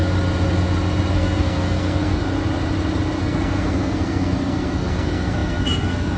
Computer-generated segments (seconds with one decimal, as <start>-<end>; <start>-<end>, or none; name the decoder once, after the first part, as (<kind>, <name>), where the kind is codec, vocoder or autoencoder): 1.1-2.2 (codec, SNAC); 3.2-6.2